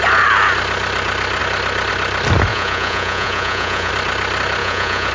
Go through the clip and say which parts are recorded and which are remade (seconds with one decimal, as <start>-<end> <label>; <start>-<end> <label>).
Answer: 0.0-2.5 recorded; 2.5-3.9 remade; 3.9-4.6 recorded; 4.6-5.1 remade